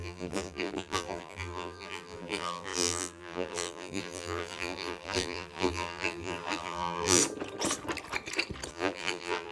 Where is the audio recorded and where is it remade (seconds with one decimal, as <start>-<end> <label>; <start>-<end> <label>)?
0.0-7.2 remade; 7.2-8.7 recorded; 8.7-9.5 remade